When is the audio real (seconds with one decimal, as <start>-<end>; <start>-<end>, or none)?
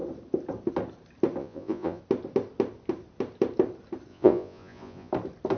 0.0-1.4; 2.0-4.1; 5.1-5.6